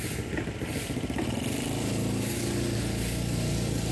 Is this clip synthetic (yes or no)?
no